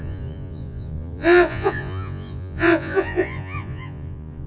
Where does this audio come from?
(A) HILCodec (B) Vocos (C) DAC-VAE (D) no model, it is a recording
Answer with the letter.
B